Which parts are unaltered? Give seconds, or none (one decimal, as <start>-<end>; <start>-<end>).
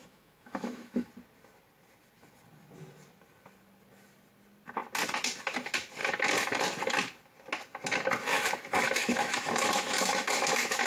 1.1-8.3